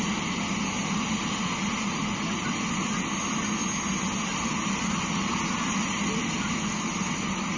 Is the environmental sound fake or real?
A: real